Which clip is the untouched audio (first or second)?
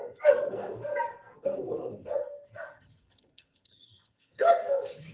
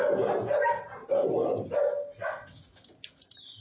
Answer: second